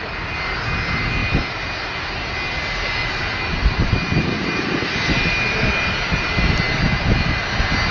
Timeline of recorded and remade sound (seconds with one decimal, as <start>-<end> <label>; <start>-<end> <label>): 0.0-7.9 recorded